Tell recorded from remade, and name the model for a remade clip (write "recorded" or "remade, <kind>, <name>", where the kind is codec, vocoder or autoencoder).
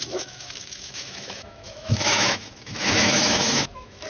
remade, autoencoder, DAC-VAE